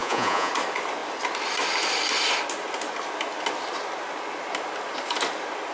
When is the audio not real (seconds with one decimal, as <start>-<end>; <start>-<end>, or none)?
0.0-0.5